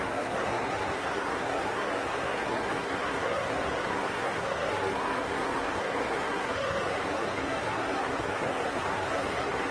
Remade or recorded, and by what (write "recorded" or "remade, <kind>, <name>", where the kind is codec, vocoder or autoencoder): remade, codec, SNAC